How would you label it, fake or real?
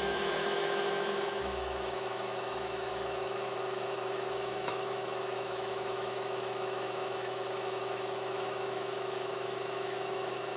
fake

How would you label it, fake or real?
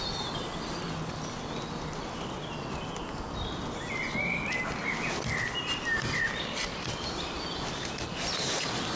real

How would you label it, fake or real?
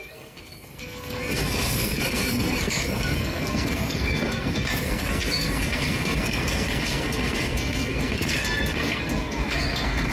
fake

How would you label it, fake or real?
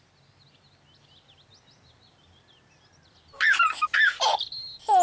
real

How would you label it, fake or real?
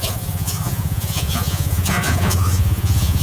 fake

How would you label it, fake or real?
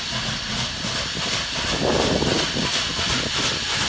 real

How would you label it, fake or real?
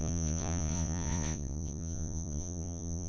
fake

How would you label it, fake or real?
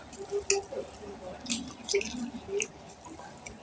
real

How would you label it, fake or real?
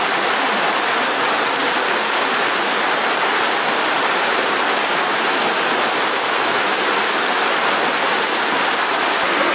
real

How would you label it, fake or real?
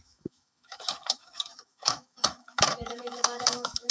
fake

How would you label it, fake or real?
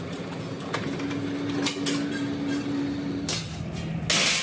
real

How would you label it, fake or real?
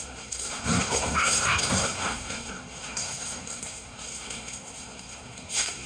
fake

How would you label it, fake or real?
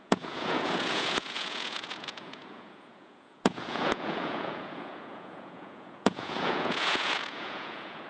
fake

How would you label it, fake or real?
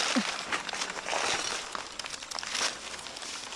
real